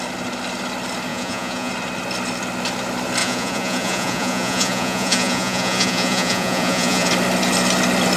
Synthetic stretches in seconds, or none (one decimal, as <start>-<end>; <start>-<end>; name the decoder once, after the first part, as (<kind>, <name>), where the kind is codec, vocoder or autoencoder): 1.1-1.7 (vocoder, Vocos); 3.2-7.1

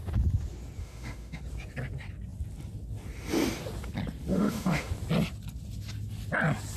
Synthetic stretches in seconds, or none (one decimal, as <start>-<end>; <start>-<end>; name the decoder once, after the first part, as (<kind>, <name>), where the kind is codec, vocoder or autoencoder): 0.8-1.4 (autoencoder, DAC-VAE); 4.3-4.9

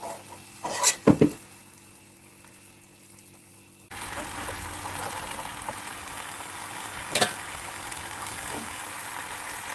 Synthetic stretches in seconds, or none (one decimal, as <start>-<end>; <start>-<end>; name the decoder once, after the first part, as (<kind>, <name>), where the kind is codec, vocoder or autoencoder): 5.9-8.8 (codec, DAC)

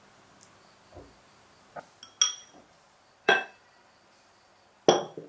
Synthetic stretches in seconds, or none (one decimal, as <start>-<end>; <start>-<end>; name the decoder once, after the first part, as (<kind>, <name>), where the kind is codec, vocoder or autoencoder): 2.4-4.7 (vocoder, BigVGAN v2)

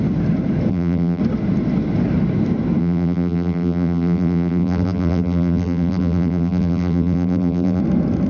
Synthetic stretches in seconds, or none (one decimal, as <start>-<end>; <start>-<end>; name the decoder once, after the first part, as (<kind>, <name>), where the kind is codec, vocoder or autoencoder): 0.7-1.2 (vocoder, BigVGAN v2); 2.8-7.8

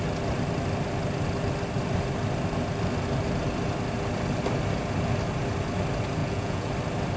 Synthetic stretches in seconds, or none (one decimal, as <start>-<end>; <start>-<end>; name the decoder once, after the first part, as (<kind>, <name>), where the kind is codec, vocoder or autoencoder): 6.2-6.7 (vocoder, Vocos)